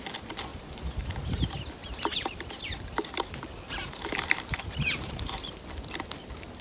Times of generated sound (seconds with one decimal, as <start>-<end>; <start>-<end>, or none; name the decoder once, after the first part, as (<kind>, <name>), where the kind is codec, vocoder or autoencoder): 0.5-1.1 (vocoder, BigVGAN v2); 1.8-5.5